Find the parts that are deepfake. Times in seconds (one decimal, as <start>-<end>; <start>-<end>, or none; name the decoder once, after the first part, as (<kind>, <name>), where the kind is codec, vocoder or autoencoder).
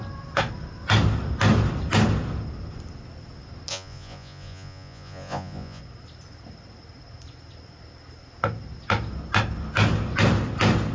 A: 3.7-5.8 (vocoder, Vocos)